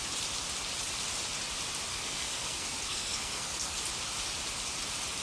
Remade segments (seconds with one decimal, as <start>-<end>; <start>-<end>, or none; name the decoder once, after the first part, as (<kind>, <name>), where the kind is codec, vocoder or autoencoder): 1.9-3.8 (codec, SNAC)